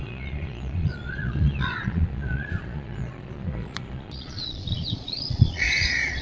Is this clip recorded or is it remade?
remade